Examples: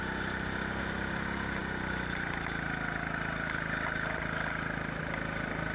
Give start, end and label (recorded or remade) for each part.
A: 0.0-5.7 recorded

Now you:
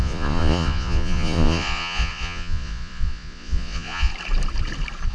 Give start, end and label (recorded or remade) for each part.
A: 0.0-4.1 remade; 4.1-5.1 recorded

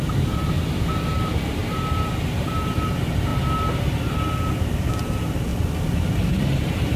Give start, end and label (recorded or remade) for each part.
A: 0.0-3.3 remade; 3.3-4.9 recorded; 4.9-5.5 remade; 5.5-6.3 recorded; 6.3-7.0 remade